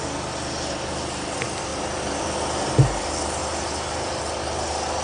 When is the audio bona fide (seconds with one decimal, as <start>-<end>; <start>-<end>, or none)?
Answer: 0.0-1.7; 2.7-5.0